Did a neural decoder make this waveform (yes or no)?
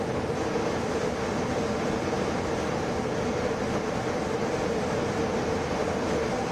no